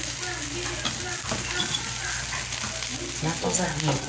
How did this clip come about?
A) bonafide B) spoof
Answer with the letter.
A